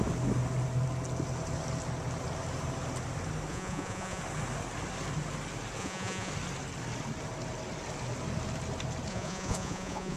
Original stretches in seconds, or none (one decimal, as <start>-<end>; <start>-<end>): 0.0-3.5; 4.2-5.8; 6.3-9.1